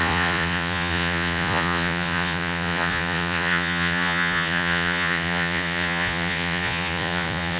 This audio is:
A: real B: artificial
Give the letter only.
B